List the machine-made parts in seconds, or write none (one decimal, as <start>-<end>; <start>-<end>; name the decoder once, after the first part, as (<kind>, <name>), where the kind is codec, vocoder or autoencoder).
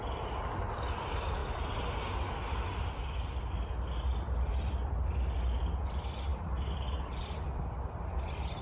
none